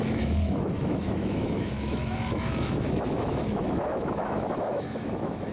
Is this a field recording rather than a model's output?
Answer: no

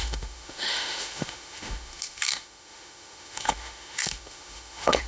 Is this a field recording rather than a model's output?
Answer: no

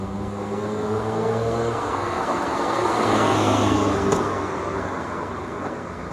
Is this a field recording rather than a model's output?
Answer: no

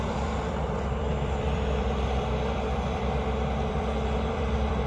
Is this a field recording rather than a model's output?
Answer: no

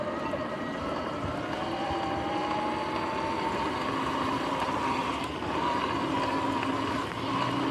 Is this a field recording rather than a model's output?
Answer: yes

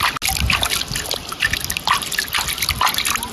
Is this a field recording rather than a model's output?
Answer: yes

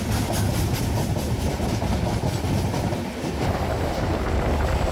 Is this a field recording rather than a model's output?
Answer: yes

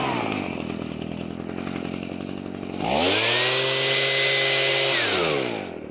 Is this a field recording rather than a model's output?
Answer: yes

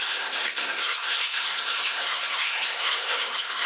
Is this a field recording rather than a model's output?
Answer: no